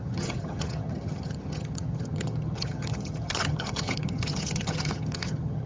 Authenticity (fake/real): fake